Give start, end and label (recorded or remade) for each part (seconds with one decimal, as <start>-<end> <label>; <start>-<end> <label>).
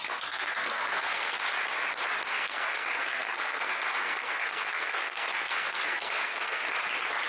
0.0-1.4 remade; 1.4-2.3 recorded; 2.3-6.6 remade; 6.6-7.3 recorded